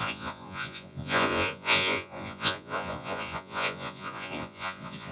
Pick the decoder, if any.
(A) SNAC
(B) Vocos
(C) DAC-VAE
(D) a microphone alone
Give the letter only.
B